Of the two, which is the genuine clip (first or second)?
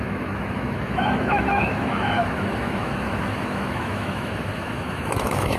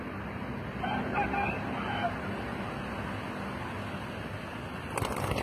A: second